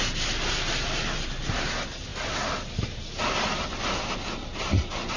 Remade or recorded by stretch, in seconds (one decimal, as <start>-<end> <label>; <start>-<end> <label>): 0.0-5.2 recorded